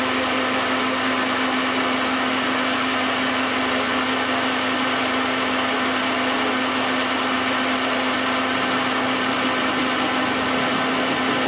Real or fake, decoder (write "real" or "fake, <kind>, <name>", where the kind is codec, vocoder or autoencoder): real